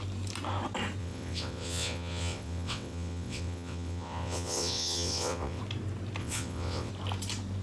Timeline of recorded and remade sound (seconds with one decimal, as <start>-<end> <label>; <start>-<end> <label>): 0.0-1.0 recorded; 1.0-5.6 remade; 5.6-6.2 recorded; 6.2-6.9 remade; 6.9-7.6 recorded

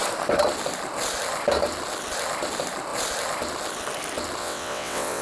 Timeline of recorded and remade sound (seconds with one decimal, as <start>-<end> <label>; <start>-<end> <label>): 0.0-4.4 recorded; 4.4-5.2 remade

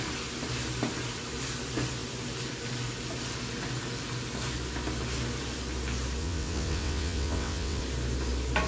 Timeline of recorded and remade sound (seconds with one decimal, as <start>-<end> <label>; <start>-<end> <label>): 0.0-6.2 recorded; 6.2-7.8 remade; 7.8-8.7 recorded

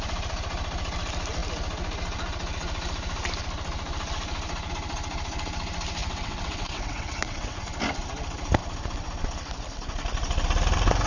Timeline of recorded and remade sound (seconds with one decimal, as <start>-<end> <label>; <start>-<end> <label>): 0.0-6.0 recorded; 6.0-7.6 remade; 7.6-11.1 recorded